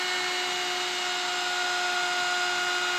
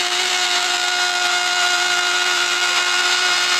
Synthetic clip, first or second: second